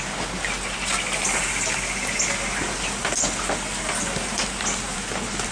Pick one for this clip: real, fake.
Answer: real